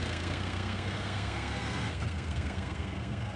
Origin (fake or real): fake